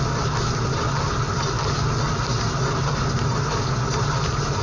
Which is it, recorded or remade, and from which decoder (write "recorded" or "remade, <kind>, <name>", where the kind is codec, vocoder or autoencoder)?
recorded